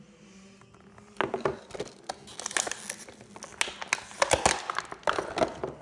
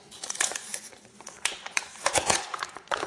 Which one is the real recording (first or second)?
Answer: first